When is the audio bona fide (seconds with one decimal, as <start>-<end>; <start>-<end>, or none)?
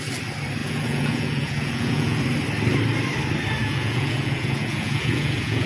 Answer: 0.0-0.6; 2.2-3.6